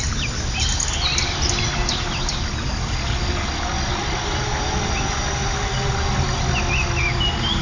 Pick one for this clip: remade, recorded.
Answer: recorded